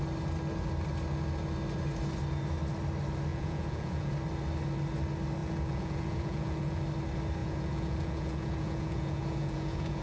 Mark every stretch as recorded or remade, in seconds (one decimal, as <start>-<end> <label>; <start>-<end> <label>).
0.0-3.3 recorded; 3.3-4.1 remade; 4.1-5.4 recorded; 5.4-6.8 remade; 6.8-7.4 recorded; 7.4-10.0 remade